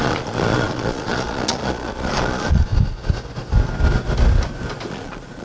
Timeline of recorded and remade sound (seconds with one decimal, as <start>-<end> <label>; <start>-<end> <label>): 0.0-2.7 remade; 2.7-4.9 recorded; 4.9-5.4 remade